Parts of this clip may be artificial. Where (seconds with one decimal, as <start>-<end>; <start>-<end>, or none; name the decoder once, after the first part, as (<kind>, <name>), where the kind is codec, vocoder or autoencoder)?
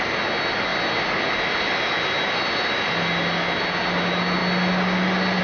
none